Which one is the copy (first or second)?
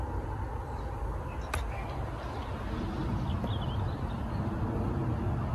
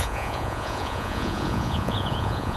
second